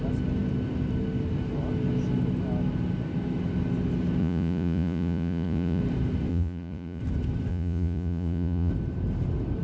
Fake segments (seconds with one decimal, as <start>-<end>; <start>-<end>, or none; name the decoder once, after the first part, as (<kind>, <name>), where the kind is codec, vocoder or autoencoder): 4.2-5.8 (vocoder, Vocos); 6.3-7.0; 7.5-8.7